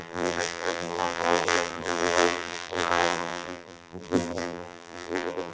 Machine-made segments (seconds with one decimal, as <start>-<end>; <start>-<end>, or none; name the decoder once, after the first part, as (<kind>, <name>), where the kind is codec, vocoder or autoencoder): 0.0-5.5 (vocoder, BigVGAN v2)

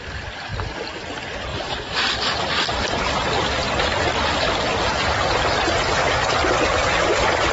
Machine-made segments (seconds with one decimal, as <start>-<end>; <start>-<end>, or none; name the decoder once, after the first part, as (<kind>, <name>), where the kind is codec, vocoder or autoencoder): 1.5-4.5 (vocoder, BigVGAN v2)

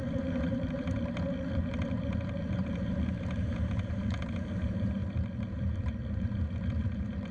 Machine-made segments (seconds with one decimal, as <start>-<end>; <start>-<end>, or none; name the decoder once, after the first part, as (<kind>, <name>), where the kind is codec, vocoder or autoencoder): 0.0-7.3 (vocoder, BigVGAN v2)

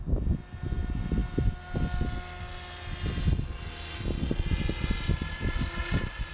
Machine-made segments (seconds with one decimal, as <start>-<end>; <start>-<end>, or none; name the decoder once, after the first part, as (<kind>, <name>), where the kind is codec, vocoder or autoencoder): none

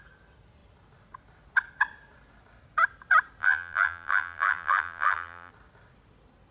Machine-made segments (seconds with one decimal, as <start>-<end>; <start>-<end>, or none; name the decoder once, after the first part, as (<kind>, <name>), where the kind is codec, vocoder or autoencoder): 3.4-5.5 (vocoder, BigVGAN v2)

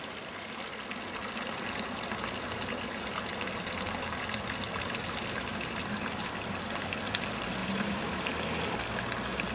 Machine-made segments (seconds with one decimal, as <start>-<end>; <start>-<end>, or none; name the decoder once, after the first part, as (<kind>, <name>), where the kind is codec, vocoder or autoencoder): 7.6-8.3 (vocoder, BigVGAN v2)